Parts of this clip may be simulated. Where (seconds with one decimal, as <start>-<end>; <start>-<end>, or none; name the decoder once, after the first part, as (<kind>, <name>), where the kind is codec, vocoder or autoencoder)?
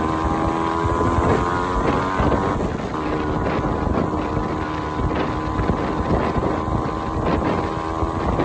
none